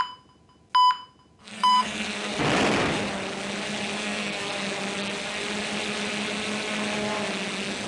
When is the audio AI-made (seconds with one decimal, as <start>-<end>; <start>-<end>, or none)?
1.4-2.3; 4.0-4.5